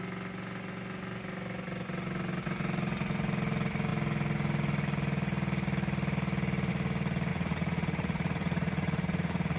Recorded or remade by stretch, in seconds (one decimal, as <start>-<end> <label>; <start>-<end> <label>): 0.0-7.3 recorded; 7.3-9.6 remade

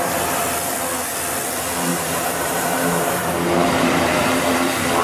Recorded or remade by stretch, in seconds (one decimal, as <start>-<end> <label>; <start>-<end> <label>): 0.0-1.9 recorded; 1.9-5.0 remade